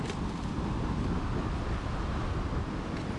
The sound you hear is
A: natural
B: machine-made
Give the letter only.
A